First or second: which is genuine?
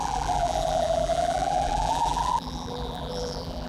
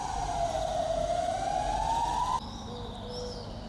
second